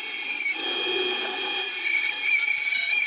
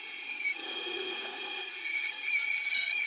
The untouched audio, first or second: first